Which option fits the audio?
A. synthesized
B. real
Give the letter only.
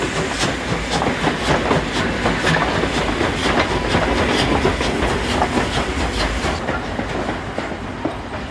B